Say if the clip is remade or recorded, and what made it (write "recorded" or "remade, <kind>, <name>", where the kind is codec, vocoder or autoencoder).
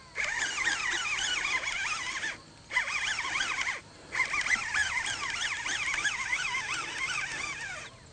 recorded